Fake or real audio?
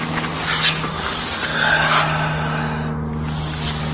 real